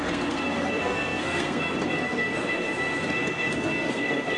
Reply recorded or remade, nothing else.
remade